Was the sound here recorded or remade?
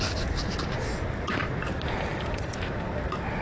recorded